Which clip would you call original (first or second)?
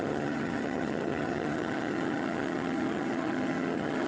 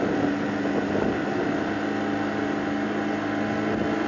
second